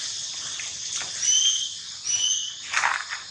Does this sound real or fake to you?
real